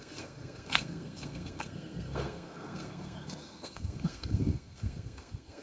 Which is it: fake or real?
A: fake